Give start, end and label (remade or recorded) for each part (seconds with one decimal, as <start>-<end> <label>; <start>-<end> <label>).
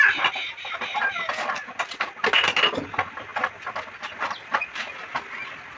0.0-5.8 recorded